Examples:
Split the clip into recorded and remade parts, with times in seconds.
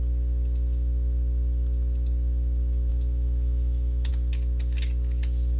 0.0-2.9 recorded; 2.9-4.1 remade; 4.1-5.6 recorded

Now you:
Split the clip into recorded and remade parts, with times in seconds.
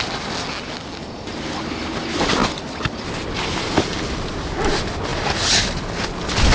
0.0-6.5 recorded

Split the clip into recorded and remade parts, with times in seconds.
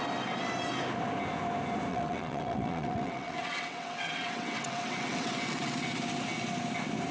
0.0-1.9 recorded; 1.9-5.7 remade; 5.7-7.1 recorded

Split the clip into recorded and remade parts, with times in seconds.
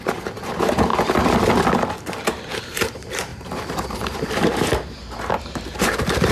0.0-0.9 remade; 0.9-2.6 recorded; 2.6-6.3 remade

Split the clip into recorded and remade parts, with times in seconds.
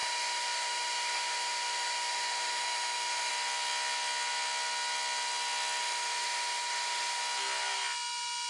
0.0-3.3 remade; 3.3-5.8 recorded; 5.8-7.2 remade; 7.2-8.5 recorded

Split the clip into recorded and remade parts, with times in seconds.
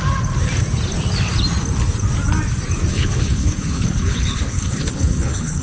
0.0-2.9 recorded; 2.9-5.6 remade